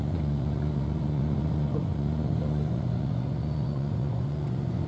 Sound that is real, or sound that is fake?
fake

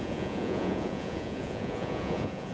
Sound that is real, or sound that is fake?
fake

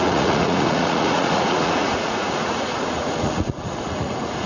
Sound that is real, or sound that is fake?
fake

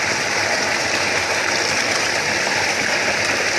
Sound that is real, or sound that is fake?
real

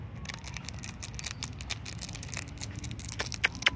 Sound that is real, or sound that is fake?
real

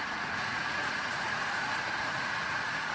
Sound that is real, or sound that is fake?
fake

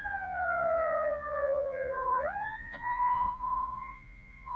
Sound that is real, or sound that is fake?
fake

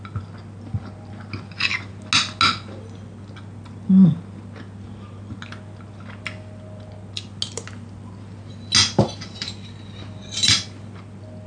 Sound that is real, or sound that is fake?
real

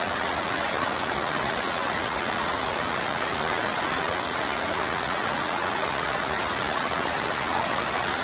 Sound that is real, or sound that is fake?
fake